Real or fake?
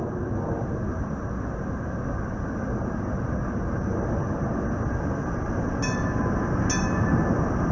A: real